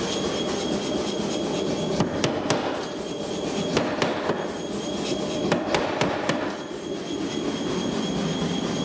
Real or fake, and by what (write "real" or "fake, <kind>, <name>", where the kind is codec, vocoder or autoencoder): real